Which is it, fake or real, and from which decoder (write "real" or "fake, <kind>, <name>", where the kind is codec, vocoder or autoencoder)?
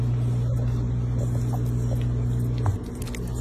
real